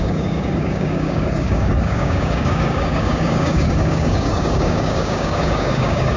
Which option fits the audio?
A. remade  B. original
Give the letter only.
A